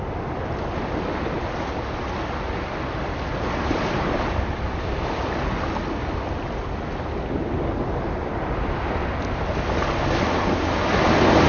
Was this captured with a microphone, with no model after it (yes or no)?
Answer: yes